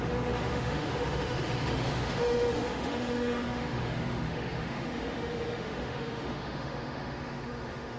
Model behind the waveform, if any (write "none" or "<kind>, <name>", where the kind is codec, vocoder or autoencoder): autoencoder, DAC-VAE